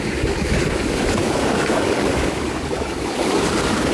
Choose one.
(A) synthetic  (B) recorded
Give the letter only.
A